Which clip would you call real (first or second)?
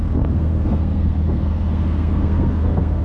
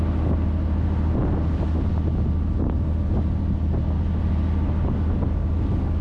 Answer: second